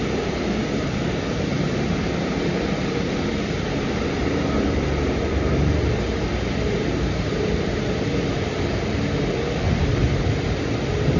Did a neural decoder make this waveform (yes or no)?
yes